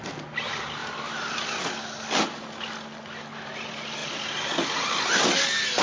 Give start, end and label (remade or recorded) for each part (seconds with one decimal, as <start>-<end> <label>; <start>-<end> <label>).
0.0-5.8 recorded